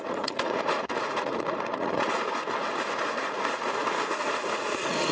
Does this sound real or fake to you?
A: fake